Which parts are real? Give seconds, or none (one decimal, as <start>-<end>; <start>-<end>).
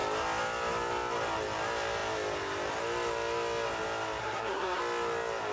0.0-4.2; 4.8-5.5